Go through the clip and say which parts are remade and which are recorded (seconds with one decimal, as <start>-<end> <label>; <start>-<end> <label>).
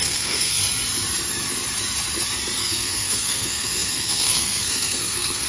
0.0-0.6 remade; 0.6-2.6 recorded; 2.6-5.5 remade